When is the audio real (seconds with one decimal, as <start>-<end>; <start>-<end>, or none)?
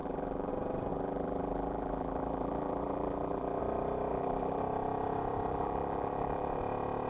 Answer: 0.5-0.9; 3.6-4.1; 4.6-5.5; 6.6-7.1